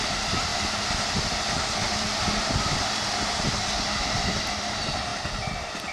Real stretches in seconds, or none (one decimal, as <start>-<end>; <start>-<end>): 0.5-3.8